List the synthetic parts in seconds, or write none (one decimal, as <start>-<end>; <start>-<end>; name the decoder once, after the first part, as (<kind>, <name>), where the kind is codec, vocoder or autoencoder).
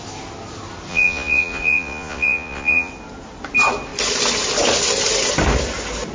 0.9-2.9 (vocoder, Vocos)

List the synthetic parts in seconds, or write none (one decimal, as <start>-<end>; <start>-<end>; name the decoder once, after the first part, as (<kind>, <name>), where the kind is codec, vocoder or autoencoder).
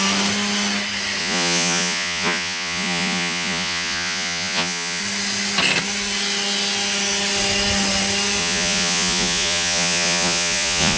1.2-5.0 (vocoder, Vocos); 8.4-11.0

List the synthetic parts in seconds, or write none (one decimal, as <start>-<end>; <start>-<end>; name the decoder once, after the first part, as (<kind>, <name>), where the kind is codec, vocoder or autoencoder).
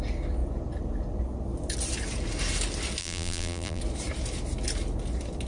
3.0-3.8 (vocoder, BigVGAN v2)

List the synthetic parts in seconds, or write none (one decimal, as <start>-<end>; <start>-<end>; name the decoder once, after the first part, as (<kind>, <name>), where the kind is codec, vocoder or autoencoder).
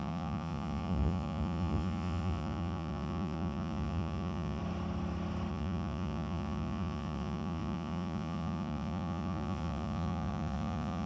0.0-4.6 (vocoder, Vocos); 5.5-11.1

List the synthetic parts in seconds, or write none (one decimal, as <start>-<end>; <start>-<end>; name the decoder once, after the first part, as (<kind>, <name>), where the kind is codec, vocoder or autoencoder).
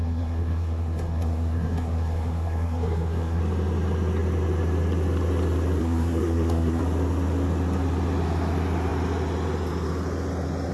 0.0-3.4 (codec, SNAC); 5.8-6.8